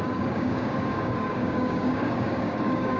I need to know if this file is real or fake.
fake